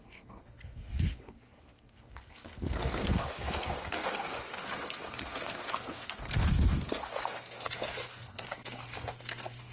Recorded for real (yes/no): no